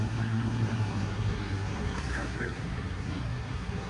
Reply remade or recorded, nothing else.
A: remade